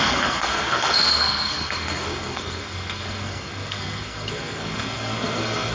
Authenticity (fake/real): fake